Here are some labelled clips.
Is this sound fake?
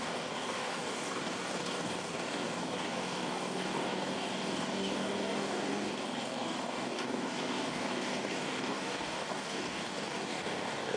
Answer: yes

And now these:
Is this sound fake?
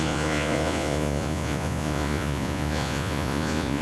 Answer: yes